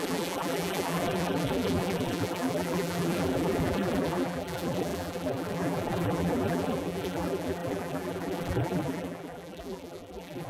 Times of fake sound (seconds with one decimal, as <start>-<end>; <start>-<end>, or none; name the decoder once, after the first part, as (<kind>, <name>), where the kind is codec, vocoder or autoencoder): 0.0-10.5 (vocoder, BigVGAN v2)